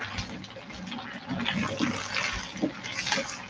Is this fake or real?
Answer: real